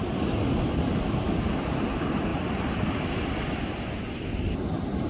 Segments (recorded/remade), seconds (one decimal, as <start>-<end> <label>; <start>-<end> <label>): 0.0-2.3 recorded; 2.3-3.2 remade; 3.2-5.1 recorded